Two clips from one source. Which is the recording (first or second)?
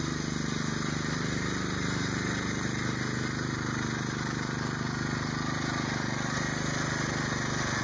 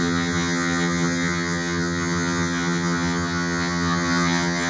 first